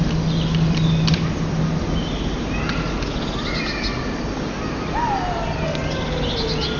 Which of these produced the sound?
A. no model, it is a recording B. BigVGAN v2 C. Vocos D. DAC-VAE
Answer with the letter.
A